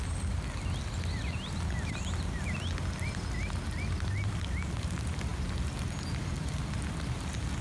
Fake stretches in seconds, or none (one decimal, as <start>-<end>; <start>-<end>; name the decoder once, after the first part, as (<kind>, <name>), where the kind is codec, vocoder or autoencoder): none